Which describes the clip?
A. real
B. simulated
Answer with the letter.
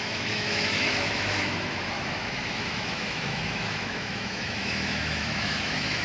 B